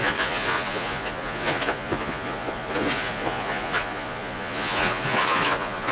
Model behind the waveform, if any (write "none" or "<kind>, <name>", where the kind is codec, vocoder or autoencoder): vocoder, Vocos